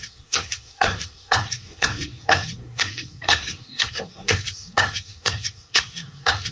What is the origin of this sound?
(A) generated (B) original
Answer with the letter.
A